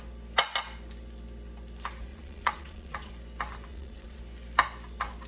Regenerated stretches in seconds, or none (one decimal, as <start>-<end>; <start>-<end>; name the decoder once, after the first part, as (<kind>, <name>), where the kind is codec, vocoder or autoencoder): 2.1-3.1 (vocoder, Vocos); 3.7-4.2